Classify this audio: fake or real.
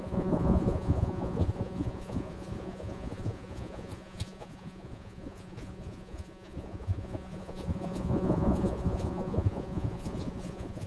fake